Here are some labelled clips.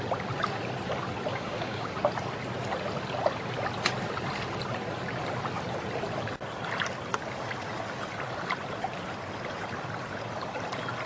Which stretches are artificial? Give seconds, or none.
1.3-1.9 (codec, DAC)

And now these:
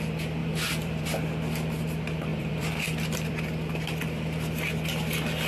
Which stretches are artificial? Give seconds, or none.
0.4-1.0 (vocoder, BigVGAN v2); 2.3-3.3

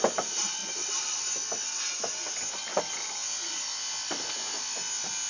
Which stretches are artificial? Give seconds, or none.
none

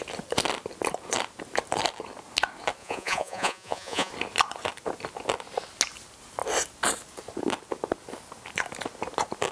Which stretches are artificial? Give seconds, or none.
2.8-4.1 (vocoder, Vocos)

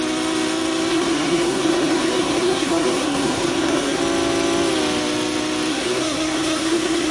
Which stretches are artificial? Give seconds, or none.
0.9-4.0 (codec, SNAC); 5.7-7.1

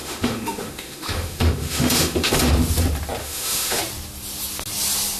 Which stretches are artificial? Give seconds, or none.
0.0-2.3 (autoencoder, DAC-VAE); 3.2-3.8

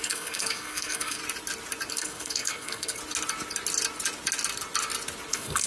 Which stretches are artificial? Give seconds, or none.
0.0-1.2 (codec, SNAC); 1.9-3.0; 5.3-5.7

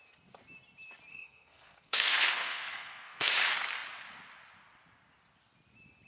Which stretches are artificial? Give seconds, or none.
1.1-3.3 (codec, SNAC)